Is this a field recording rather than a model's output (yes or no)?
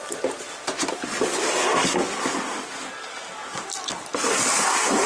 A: yes